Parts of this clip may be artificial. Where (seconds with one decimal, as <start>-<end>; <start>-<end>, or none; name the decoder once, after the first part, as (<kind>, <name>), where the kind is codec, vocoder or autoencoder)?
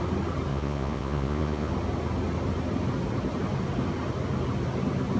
0.5-1.7 (vocoder, Vocos)